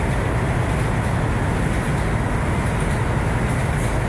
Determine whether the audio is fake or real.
real